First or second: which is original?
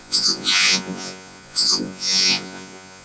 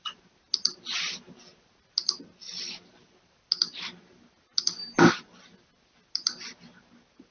second